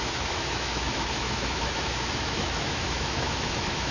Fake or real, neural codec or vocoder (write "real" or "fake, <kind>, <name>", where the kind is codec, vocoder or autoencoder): fake, autoencoder, DAC-VAE